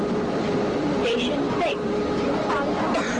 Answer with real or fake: real